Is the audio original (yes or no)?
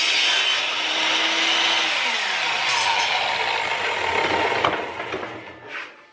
yes